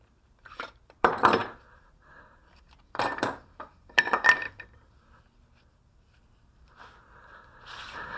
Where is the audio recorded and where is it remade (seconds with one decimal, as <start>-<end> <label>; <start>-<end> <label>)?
0.0-8.2 remade